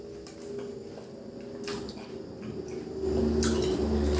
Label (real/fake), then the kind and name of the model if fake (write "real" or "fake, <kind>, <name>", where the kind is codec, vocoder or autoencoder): real